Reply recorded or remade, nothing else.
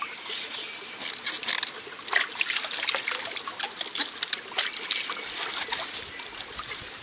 recorded